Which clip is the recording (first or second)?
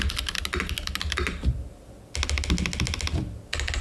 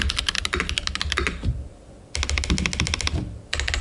first